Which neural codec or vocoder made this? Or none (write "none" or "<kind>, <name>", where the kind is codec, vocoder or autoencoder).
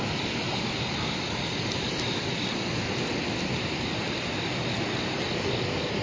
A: none